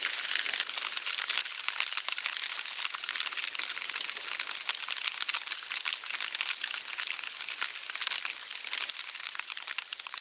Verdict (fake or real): real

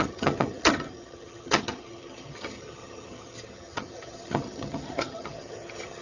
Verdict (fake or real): fake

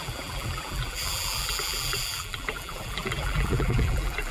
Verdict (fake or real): fake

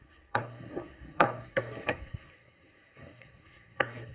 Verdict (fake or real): fake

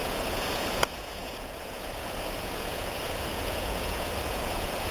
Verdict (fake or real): fake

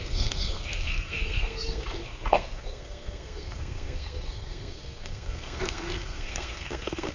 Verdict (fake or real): fake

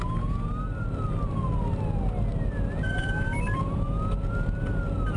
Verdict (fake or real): real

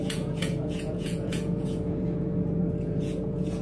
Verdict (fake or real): fake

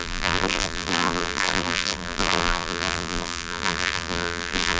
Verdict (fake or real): fake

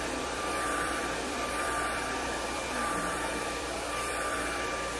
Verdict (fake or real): fake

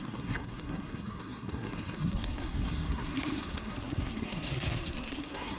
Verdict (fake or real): fake